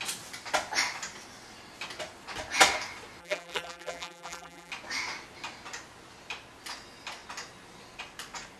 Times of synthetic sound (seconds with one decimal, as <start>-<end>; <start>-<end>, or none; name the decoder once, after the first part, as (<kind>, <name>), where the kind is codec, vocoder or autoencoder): 3.2-4.7 (vocoder, BigVGAN v2)